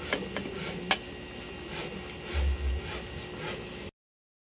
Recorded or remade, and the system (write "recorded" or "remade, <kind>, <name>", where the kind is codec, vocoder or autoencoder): recorded